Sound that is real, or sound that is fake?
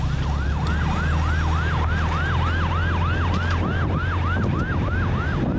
real